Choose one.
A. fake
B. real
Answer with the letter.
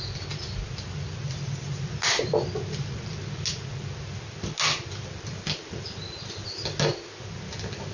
B